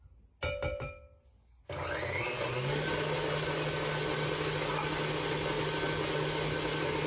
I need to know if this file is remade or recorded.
recorded